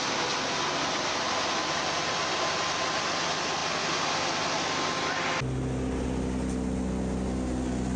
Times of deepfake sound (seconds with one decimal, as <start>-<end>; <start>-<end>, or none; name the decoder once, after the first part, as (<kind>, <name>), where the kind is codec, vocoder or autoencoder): none